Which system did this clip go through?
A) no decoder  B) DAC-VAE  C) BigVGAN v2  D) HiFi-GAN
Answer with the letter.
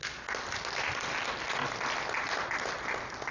A